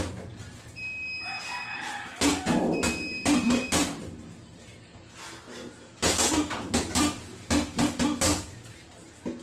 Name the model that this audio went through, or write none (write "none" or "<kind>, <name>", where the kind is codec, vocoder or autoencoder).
none